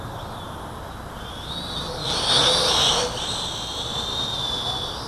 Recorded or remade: recorded